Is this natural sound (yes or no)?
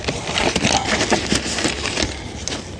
yes